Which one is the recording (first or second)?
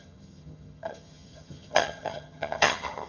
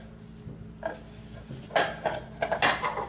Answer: second